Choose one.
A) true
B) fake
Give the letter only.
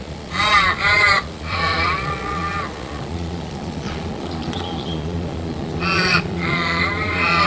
B